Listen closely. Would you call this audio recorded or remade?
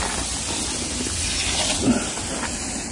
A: recorded